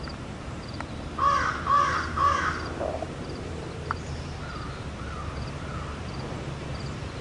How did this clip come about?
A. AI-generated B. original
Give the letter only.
A